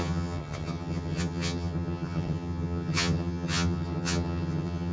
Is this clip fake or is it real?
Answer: fake